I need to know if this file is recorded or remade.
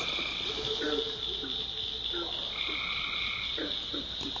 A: recorded